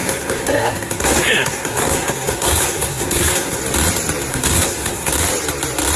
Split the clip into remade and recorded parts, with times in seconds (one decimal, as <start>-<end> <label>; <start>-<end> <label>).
0.0-3.6 remade; 3.6-4.3 recorded; 4.3-5.1 remade; 5.1-6.0 recorded